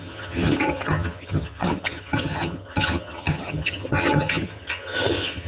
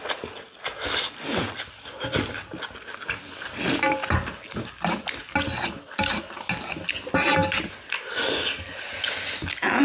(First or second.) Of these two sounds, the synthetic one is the first